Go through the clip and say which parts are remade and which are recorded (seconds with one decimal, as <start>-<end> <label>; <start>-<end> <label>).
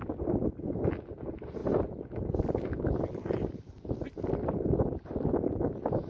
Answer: 0.0-6.1 recorded